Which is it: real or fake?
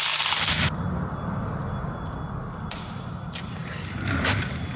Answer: real